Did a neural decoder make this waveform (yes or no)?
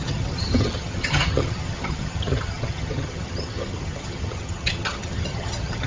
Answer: yes